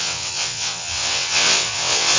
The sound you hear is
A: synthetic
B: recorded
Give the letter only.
A